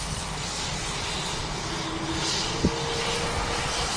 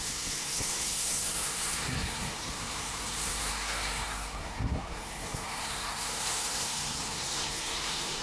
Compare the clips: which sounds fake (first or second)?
second